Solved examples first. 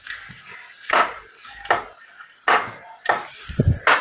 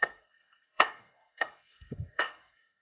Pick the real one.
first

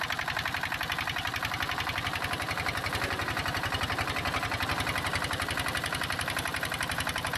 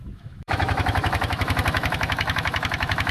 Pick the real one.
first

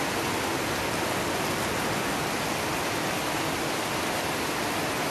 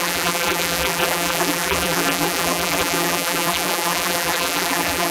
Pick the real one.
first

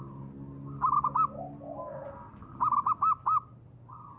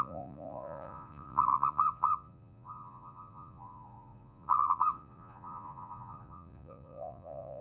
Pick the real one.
first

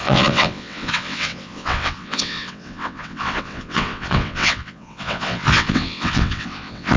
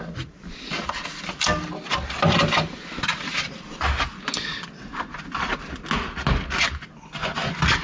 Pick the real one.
second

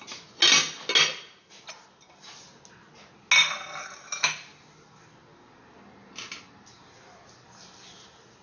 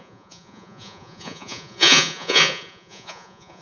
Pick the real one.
first